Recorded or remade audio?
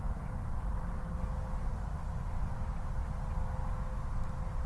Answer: recorded